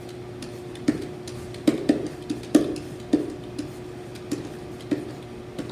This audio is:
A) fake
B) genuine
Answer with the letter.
B